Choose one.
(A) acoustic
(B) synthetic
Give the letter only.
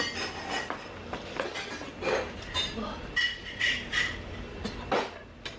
A